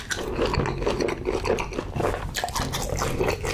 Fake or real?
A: real